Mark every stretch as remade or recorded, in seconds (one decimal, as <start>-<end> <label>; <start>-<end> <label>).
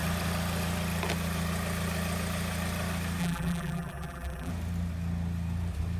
0.0-3.2 recorded; 3.2-4.5 remade; 4.5-6.0 recorded